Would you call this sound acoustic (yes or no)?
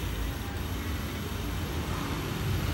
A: yes